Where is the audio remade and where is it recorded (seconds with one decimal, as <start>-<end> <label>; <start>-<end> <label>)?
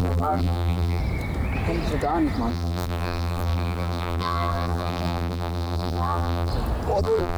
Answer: 0.0-1.0 remade; 1.0-2.5 recorded; 2.5-6.5 remade; 6.5-7.0 recorded; 7.0-7.4 remade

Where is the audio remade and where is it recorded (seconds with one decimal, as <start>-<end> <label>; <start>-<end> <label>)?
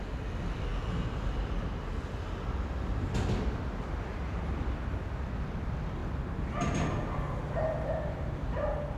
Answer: 0.0-9.0 recorded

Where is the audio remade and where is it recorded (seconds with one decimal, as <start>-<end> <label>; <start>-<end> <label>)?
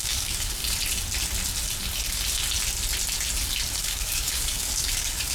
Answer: 0.0-0.6 remade; 0.6-3.8 recorded; 3.8-5.3 remade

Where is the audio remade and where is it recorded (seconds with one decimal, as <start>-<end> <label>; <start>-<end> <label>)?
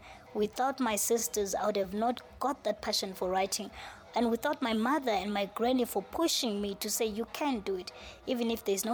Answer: 0.0-5.3 remade; 5.3-8.9 recorded